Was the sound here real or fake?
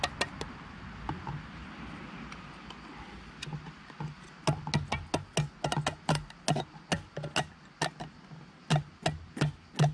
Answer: real